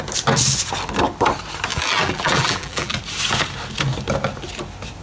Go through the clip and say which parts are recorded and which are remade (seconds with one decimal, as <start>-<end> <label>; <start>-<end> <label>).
0.0-1.7 recorded; 1.7-3.0 remade; 3.0-5.0 recorded

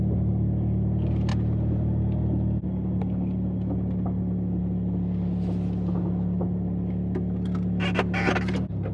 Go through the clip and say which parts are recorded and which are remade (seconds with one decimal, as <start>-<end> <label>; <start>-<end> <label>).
0.0-1.3 recorded; 1.3-2.0 remade; 2.0-8.9 recorded

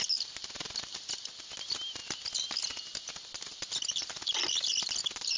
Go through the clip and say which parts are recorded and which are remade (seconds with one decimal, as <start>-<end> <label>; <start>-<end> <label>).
0.0-5.4 recorded

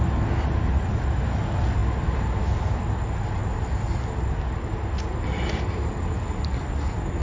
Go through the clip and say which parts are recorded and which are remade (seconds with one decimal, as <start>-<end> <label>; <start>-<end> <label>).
0.0-7.2 recorded

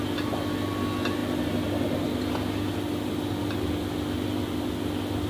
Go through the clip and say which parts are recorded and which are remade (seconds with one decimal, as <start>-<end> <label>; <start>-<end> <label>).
0.0-5.3 recorded

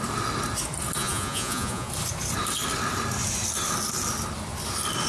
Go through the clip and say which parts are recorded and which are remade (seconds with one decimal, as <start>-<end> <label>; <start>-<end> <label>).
0.0-1.0 recorded; 1.0-1.9 remade; 1.9-5.1 recorded

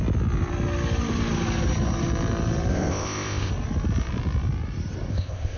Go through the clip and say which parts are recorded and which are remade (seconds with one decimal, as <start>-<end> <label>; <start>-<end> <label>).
0.0-2.7 recorded; 2.7-3.5 remade; 3.5-5.1 recorded; 5.1-5.6 remade

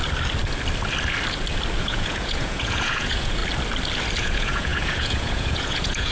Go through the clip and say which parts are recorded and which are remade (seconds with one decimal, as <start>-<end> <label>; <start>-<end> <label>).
0.0-1.8 recorded; 1.8-3.4 remade; 3.4-4.2 recorded; 4.2-6.1 remade